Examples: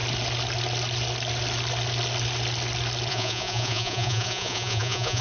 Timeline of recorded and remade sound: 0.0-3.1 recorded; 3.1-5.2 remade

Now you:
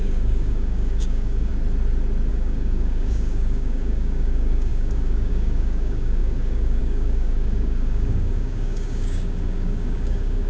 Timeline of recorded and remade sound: 0.0-1.5 remade; 1.5-2.3 recorded; 2.3-10.5 remade

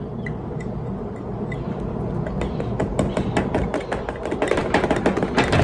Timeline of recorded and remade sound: 0.0-5.6 recorded

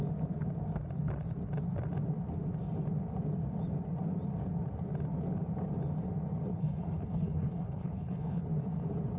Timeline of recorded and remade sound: 0.0-6.6 recorded; 6.6-8.4 remade; 8.4-9.2 recorded

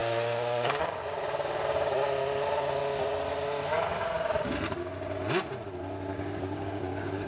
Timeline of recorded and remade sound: 0.0-1.0 remade; 1.0-6.1 recorded; 6.1-7.3 remade

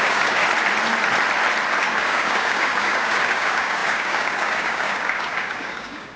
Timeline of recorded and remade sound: 0.0-0.4 remade; 0.4-1.8 recorded; 1.8-6.2 remade

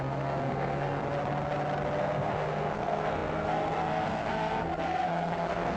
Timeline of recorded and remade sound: 0.0-1.0 remade; 1.0-2.0 recorded; 2.0-5.8 remade